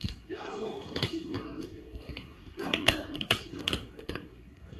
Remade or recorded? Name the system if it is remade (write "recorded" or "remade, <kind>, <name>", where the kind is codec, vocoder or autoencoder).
remade, codec, SNAC